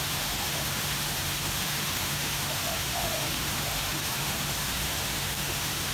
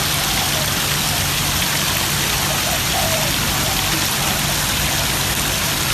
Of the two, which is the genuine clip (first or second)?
second